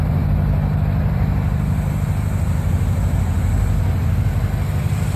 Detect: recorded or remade recorded